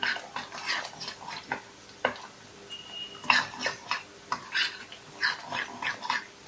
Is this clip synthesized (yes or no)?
no